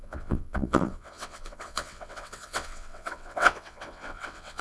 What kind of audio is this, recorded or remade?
remade